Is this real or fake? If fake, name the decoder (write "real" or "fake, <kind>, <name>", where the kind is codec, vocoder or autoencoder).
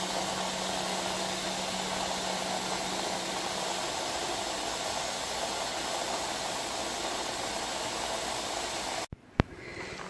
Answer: real